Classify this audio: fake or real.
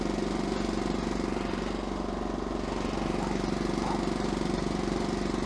real